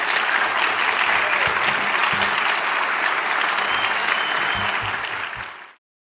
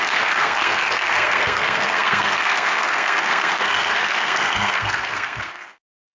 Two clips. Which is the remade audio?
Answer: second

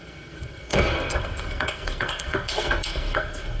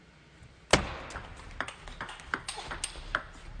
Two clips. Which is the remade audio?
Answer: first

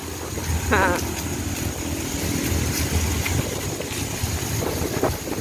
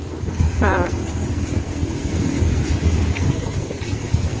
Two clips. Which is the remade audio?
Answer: second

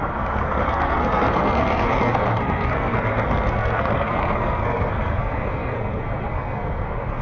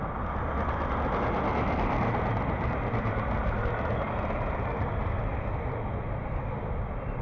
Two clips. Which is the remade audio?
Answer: first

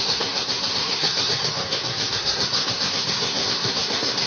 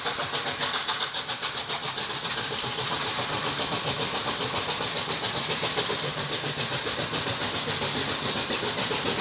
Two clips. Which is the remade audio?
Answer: first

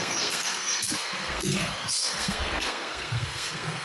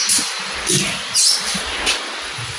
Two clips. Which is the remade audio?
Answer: first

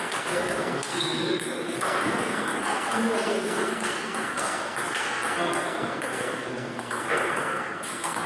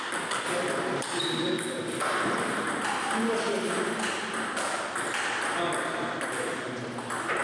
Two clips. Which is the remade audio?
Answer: first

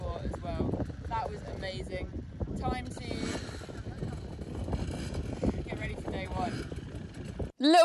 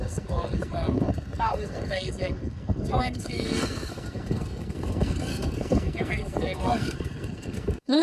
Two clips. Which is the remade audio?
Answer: second